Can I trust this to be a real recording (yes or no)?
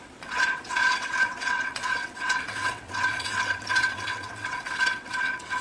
no